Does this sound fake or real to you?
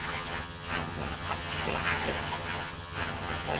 fake